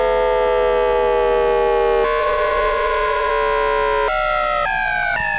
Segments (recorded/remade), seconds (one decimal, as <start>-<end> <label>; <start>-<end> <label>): 0.0-2.2 recorded; 2.2-3.3 remade; 3.3-5.4 recorded

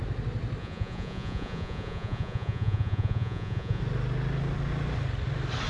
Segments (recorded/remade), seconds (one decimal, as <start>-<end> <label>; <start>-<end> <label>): 0.0-0.6 recorded; 0.6-3.8 remade; 3.8-5.7 recorded